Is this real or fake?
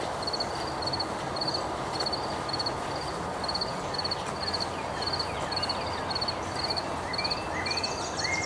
real